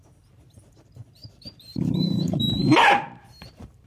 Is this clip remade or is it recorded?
remade